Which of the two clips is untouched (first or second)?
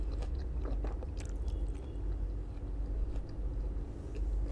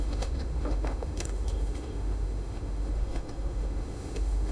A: first